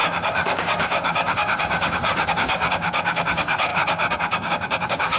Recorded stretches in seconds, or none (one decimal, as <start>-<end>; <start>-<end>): none